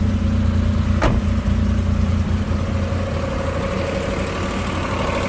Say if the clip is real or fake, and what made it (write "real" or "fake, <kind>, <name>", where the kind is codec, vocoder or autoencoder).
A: real